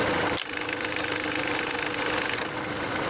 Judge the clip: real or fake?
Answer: real